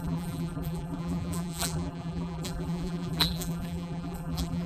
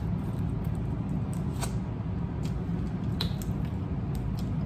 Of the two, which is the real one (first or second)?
second